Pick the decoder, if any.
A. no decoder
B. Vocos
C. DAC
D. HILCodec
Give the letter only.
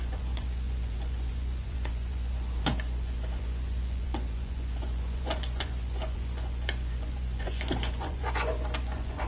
B